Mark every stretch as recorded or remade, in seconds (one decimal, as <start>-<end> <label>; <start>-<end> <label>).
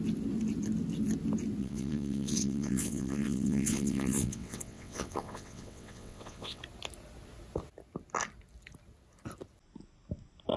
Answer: 0.0-1.6 recorded; 1.6-6.6 remade; 6.6-10.6 recorded